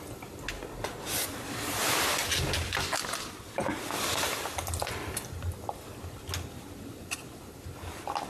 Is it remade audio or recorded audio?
recorded